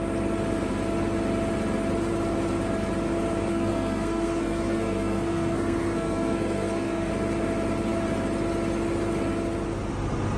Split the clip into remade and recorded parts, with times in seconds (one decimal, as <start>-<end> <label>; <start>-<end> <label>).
0.0-3.5 recorded; 3.5-7.1 remade; 7.1-10.4 recorded